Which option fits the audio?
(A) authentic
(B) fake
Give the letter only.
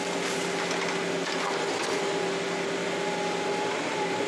A